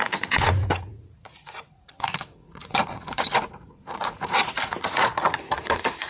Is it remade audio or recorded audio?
remade